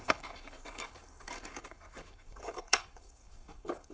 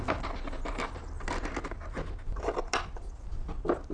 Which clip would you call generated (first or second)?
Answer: first